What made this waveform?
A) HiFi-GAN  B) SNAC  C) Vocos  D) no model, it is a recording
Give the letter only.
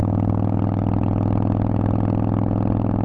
D